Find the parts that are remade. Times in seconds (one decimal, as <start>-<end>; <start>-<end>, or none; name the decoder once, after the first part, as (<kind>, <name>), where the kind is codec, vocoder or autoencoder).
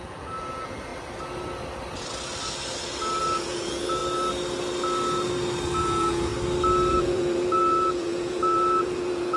0.0-0.9 (vocoder, Vocos); 3.2-4.0; 5.8-6.3; 6.9-9.4